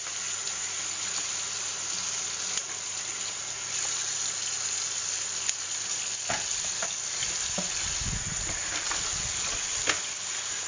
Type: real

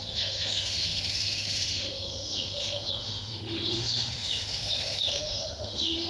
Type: fake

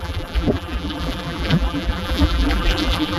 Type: fake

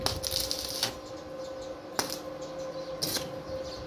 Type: real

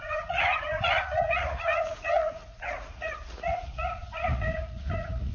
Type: fake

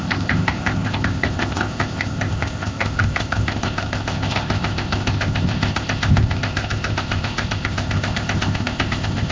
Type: fake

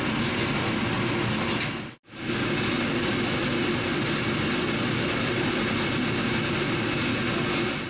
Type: real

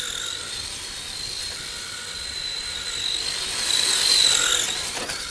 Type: real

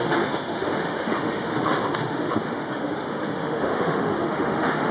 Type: fake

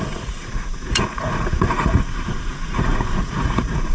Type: fake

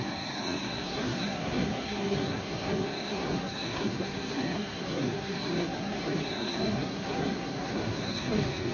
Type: fake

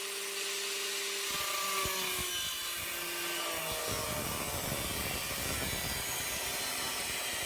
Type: real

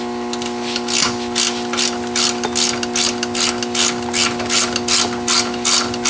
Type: real